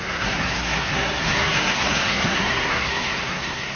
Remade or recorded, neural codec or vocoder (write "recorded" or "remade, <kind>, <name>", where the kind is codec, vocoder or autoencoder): remade, codec, SNAC